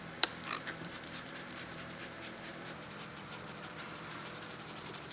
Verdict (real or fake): fake